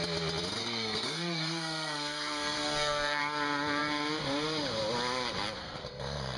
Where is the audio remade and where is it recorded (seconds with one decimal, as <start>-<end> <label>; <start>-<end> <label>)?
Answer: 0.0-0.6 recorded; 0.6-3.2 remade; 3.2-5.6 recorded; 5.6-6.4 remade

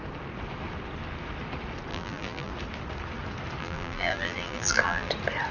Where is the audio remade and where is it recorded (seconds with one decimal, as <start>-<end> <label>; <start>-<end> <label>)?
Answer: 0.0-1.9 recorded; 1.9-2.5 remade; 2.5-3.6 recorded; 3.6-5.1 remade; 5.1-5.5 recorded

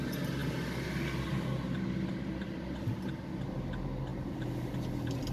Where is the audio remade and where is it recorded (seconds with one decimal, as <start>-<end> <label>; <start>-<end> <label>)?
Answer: 0.0-4.1 recorded; 4.1-4.7 remade; 4.7-5.3 recorded